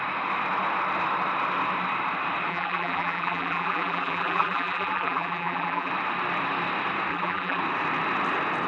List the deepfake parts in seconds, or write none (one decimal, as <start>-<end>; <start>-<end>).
2.5-5.9; 7.1-7.6